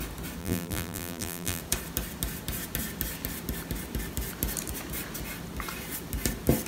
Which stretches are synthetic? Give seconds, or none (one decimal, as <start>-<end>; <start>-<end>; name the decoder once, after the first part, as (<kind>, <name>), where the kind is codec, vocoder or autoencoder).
0.4-1.6 (vocoder, BigVGAN v2)